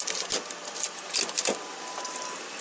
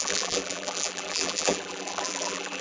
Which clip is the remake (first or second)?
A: second